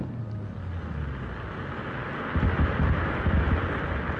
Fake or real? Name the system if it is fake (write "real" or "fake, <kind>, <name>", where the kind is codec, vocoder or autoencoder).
real